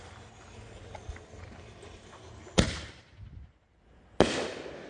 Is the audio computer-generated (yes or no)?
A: no